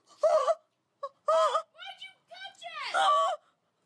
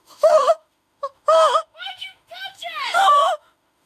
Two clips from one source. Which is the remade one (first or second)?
second